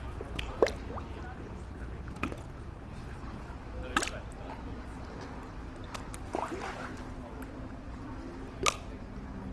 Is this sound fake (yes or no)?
no